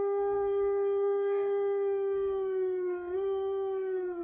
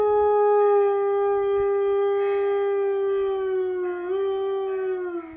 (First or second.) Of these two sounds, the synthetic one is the first